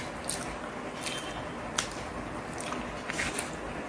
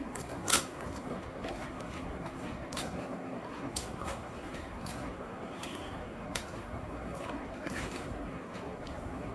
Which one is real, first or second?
first